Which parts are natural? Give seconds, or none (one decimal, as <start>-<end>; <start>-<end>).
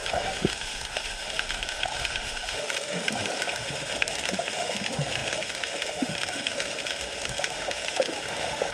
none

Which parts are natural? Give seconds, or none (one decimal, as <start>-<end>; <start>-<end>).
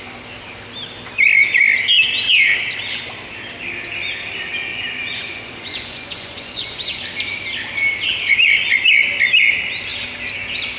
0.0-4.7; 7.0-10.8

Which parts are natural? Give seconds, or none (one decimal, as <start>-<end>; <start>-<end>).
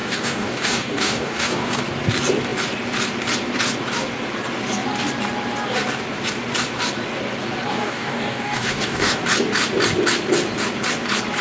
1.8-7.7; 9.2-11.4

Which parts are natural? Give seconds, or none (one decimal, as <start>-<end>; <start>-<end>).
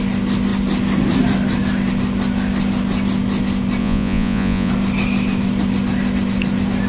0.0-3.8; 4.7-6.9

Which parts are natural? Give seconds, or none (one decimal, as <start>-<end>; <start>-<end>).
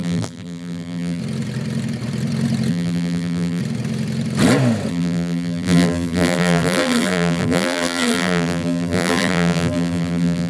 1.2-2.7; 3.6-4.9